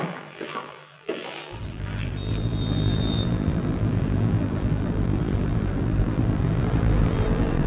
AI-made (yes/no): yes